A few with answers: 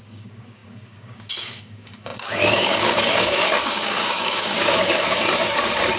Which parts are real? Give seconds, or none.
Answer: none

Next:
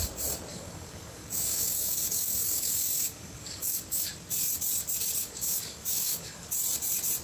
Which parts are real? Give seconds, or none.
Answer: 0.0-0.5; 4.1-5.2; 6.5-7.2

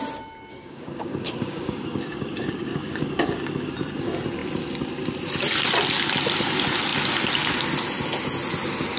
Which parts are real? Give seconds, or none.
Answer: 0.0-0.5; 3.7-9.0

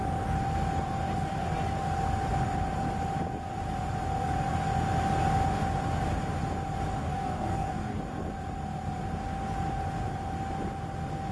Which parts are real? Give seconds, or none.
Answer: 0.0-7.0; 8.0-11.3

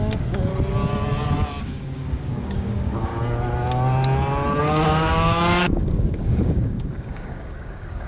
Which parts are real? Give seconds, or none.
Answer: 0.5-1.6; 3.1-4.6

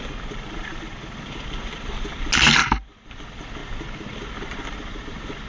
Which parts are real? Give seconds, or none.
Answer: 0.0-5.5

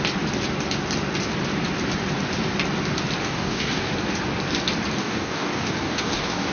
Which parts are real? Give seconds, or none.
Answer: 0.0-3.2; 3.9-5.0